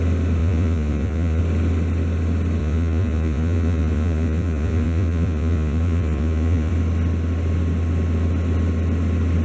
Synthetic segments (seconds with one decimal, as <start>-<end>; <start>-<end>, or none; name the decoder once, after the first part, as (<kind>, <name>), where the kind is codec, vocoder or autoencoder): 0.4-1.4 (vocoder, Vocos); 2.6-6.7